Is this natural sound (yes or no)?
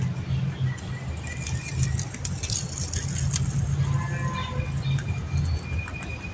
yes